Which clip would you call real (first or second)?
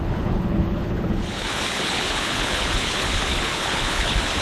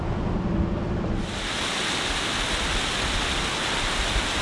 second